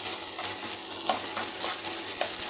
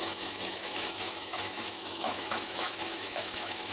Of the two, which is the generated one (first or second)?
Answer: second